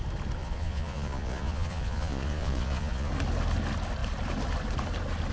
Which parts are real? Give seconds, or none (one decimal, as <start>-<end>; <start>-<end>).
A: 0.0-0.4; 3.1-5.3